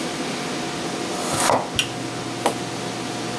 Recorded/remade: recorded